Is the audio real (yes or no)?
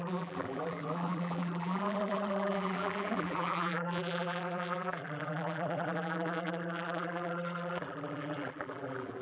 no